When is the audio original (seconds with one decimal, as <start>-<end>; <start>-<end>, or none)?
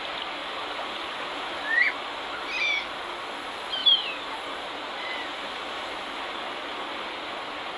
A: 0.0-0.4; 1.9-3.8; 6.4-7.8